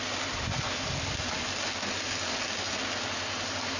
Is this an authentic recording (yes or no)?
yes